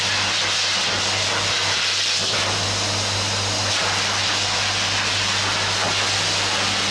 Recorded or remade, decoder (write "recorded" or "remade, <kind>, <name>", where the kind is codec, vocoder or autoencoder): recorded